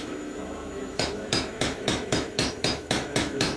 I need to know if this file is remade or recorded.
remade